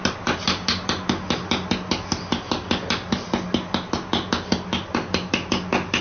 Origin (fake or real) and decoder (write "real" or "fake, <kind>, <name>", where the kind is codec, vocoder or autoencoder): real